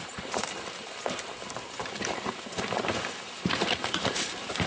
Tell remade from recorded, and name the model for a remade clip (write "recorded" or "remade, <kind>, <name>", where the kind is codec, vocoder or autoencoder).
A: remade, vocoder, BigVGAN v2